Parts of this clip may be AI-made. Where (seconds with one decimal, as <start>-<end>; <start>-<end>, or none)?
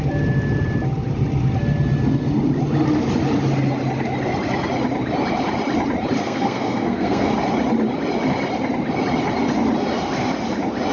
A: 6.2-7.3